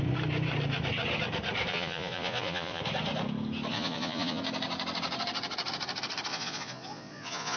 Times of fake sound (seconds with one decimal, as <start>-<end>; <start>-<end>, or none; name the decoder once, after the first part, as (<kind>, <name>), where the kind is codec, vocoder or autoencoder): 1.7-2.8 (vocoder, Vocos); 3.7-4.4; 6.3-7.6